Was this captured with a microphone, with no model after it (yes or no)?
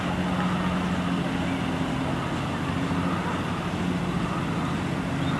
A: yes